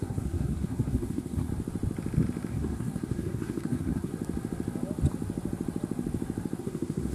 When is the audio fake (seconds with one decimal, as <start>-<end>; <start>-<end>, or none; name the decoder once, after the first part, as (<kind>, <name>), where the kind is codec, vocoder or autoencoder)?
0.0-1.5 (codec, SNAC); 2.5-4.1; 6.6-7.1